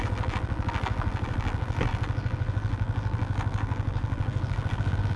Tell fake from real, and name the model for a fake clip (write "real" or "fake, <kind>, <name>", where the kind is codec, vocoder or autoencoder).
fake, vocoder, BigVGAN v2